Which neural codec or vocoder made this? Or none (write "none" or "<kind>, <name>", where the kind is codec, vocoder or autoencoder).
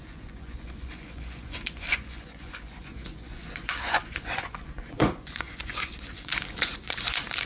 vocoder, Vocos